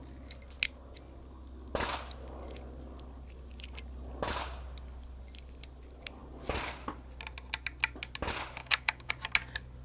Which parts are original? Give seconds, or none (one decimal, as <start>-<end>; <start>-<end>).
0.0-8.6; 9.1-9.8